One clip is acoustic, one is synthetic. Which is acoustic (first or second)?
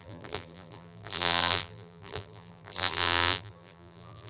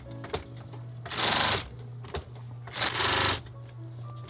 second